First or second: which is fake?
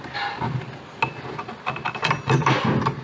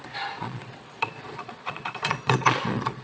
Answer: second